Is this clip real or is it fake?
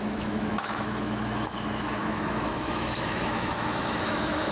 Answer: fake